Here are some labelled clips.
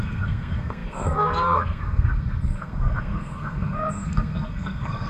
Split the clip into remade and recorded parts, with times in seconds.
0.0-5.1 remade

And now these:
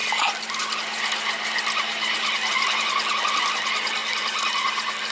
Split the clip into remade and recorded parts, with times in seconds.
0.0-5.1 recorded